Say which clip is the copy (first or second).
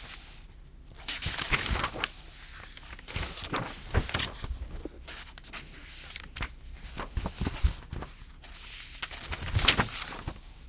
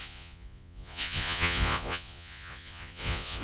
second